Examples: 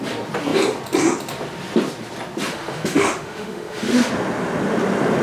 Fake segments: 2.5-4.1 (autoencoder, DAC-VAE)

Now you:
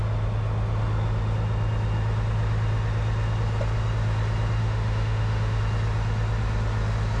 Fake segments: 4.6-5.6 (autoencoder, DAC-VAE)

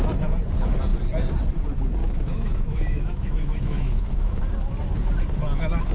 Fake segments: 2.0-4.4 (autoencoder, DAC-VAE)

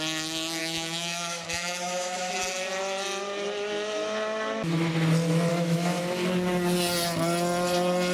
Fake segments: 0.6-2.3 (autoencoder, DAC-VAE); 5.5-6.0